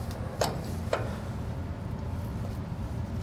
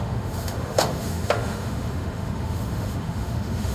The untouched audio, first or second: first